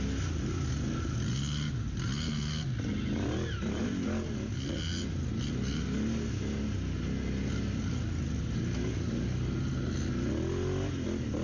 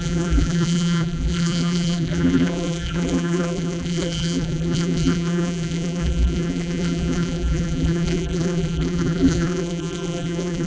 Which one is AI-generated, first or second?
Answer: second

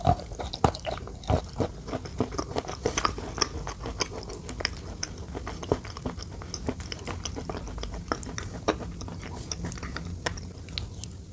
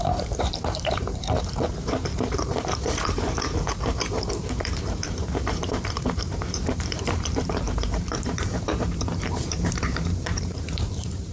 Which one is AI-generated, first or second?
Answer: second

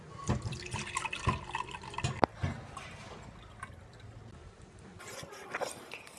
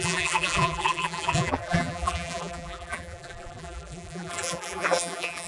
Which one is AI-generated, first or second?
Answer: second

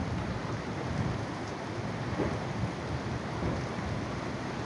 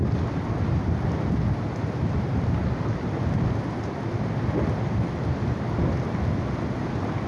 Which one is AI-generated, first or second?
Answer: first